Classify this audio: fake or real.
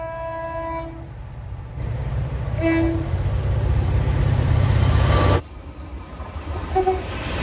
fake